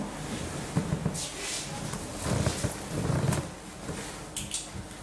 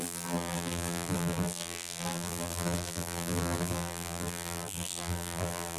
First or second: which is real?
first